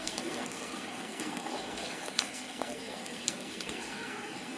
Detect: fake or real fake